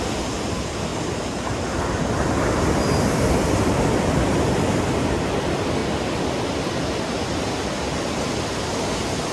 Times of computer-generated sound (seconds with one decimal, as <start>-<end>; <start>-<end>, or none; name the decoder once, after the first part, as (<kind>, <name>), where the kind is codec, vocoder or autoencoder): none